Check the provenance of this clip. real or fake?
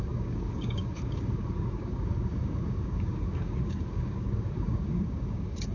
fake